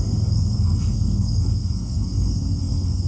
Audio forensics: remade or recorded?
remade